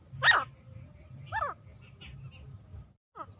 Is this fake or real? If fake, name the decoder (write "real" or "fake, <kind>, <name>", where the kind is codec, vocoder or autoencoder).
real